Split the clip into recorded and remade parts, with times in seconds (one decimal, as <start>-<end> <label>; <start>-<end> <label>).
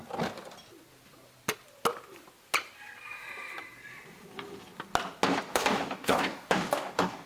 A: 0.0-5.5 recorded; 5.5-7.3 remade